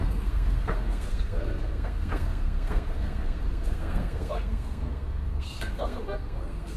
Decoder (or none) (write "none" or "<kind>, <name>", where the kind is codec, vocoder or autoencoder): codec, SNAC